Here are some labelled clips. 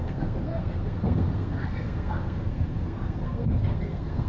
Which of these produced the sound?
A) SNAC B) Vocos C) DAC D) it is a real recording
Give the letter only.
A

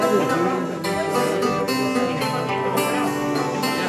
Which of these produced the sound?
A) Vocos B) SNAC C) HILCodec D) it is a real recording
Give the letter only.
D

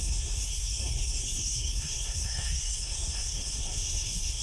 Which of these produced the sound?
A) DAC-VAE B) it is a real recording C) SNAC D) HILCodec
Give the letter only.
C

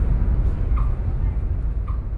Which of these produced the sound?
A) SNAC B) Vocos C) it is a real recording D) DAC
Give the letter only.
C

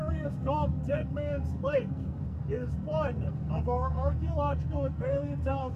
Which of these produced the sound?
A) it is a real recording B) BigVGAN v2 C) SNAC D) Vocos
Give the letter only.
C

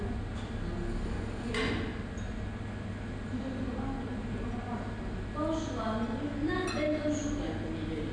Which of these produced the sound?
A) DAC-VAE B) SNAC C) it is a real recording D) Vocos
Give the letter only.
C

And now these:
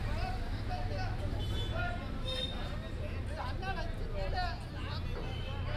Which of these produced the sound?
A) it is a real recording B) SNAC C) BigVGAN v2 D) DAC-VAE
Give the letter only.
A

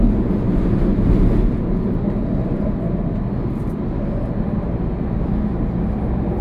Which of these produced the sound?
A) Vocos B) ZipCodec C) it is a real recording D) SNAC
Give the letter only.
C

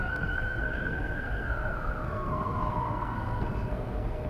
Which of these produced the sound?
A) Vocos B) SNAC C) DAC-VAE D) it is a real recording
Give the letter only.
B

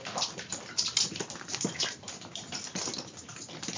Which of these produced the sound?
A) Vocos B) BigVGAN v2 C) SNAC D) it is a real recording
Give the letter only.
D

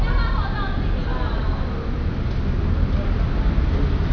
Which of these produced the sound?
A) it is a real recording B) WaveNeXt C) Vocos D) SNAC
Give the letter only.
A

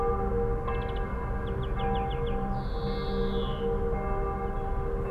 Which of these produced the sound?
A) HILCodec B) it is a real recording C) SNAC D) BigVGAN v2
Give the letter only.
B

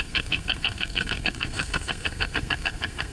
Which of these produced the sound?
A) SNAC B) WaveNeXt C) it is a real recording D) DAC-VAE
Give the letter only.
A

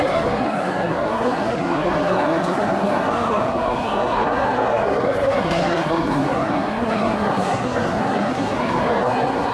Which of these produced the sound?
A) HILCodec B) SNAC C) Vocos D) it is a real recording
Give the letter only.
B